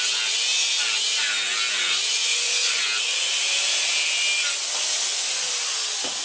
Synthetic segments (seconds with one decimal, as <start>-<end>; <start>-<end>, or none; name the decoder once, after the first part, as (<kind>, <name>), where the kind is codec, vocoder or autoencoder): 2.2-2.8 (vocoder, Vocos)